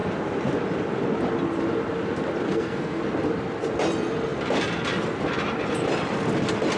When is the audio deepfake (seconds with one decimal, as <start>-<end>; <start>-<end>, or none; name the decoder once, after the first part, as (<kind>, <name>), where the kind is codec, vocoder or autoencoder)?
2.5-3.0 (codec, SNAC)